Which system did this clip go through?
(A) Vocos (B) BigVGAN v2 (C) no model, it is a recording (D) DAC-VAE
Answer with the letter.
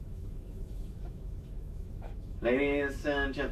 D